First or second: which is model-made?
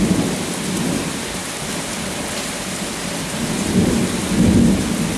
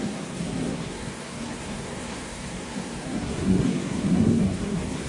second